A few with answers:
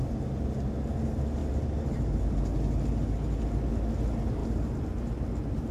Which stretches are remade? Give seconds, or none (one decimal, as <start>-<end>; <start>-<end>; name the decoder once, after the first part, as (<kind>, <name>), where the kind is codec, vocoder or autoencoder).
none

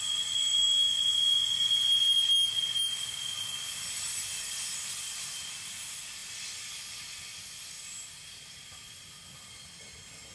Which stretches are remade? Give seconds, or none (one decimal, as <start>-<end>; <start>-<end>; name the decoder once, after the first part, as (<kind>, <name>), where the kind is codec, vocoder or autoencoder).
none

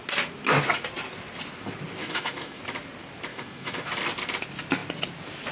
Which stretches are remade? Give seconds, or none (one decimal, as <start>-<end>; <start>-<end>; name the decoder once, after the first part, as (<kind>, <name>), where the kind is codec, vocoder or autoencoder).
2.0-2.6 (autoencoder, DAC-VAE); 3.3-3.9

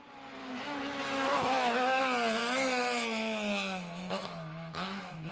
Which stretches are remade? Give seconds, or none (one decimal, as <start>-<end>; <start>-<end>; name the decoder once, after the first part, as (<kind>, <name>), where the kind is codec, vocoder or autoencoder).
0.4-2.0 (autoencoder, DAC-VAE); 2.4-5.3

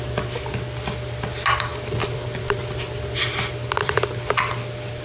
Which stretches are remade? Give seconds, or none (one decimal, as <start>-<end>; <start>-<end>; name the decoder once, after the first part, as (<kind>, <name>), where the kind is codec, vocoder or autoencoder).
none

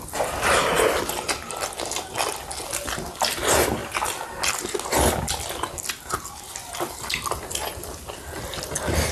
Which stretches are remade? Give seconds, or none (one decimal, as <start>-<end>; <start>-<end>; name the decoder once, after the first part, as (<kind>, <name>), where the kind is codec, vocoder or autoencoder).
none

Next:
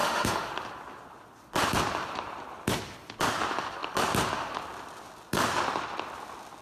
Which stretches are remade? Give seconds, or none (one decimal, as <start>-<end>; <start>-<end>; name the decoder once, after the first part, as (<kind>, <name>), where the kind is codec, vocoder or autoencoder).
0.0-0.5 (autoencoder, DAC-VAE)